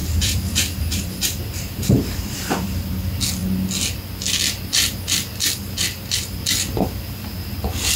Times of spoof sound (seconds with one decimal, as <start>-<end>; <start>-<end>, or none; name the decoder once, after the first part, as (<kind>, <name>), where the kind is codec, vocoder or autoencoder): 0.0-2.9 (vocoder, BigVGAN v2)